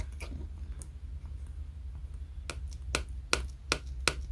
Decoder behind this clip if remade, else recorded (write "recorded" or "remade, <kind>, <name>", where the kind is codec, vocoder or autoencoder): recorded